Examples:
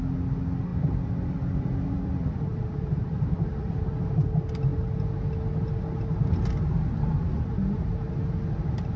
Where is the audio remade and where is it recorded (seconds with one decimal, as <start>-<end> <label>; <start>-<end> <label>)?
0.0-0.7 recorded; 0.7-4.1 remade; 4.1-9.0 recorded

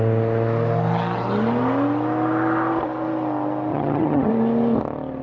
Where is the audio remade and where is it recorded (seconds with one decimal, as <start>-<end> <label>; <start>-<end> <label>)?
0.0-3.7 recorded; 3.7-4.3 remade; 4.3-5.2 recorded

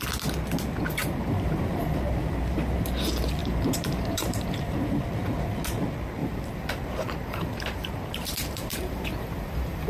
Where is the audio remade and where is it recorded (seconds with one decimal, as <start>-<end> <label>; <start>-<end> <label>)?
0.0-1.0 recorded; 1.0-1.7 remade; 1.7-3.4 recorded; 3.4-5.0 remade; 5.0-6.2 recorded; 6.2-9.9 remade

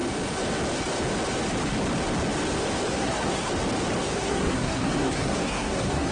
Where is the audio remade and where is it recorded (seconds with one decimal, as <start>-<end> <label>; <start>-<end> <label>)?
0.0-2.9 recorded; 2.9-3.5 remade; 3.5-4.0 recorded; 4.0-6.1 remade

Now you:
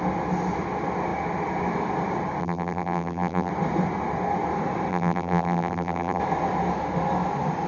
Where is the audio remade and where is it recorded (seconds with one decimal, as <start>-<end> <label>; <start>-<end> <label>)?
0.0-2.4 recorded; 2.4-3.5 remade; 3.5-4.9 recorded; 4.9-6.2 remade; 6.2-7.7 recorded

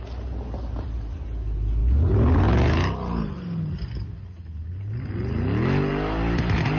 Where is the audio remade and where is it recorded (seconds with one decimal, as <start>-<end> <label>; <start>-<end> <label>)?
0.0-6.8 recorded